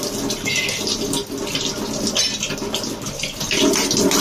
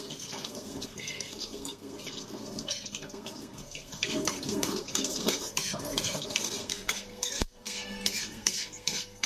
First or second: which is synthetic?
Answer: second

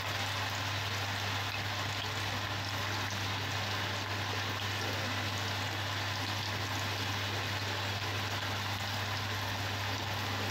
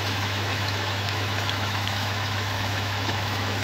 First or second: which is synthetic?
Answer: second